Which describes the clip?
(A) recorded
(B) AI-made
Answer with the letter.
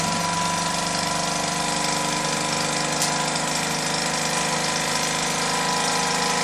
A